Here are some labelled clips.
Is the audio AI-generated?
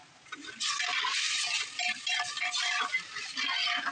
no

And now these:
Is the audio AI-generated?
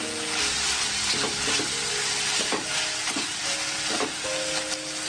no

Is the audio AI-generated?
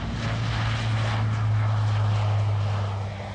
no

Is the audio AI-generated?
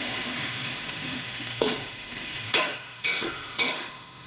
yes